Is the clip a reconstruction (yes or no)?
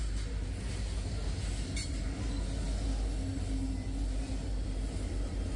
no